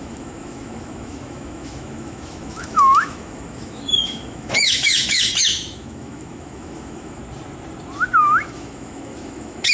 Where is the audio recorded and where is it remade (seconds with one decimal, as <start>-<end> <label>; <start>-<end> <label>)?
0.0-7.2 remade; 7.2-8.2 recorded; 8.2-9.7 remade